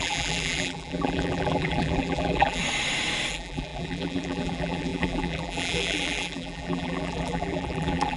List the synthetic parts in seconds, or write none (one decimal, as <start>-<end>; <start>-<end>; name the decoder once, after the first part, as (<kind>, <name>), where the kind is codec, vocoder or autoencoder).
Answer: 0.0-2.6 (vocoder, BigVGAN v2); 3.3-8.2